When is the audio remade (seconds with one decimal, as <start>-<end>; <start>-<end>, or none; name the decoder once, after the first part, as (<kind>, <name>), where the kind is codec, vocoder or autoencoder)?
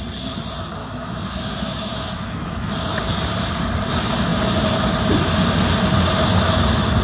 0.8-2.7 (autoencoder, DAC-VAE)